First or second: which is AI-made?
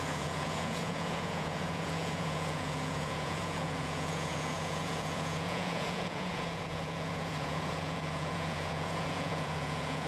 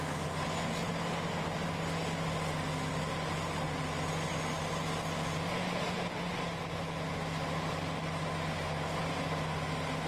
first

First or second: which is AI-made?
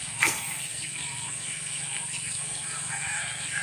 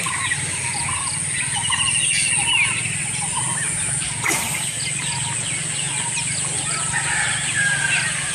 first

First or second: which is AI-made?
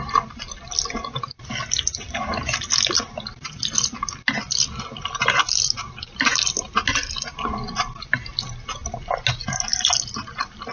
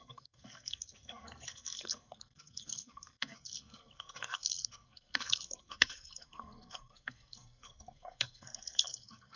second